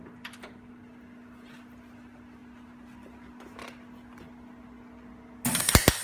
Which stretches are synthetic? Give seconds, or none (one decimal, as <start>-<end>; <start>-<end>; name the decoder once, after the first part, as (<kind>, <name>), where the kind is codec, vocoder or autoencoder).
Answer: none